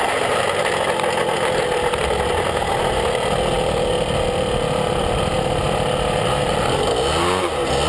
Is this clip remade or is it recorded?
recorded